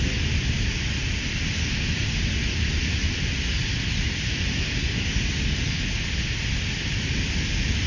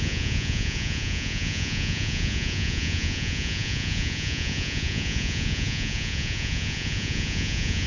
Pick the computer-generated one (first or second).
second